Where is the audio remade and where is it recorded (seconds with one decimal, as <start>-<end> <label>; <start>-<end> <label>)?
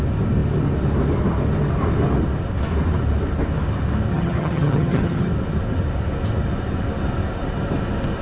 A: 0.0-4.1 recorded; 4.1-5.3 remade; 5.3-8.2 recorded